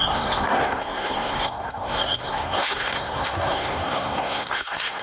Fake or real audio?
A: fake